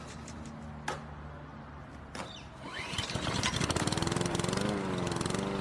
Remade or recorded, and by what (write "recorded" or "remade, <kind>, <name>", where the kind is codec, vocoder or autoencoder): recorded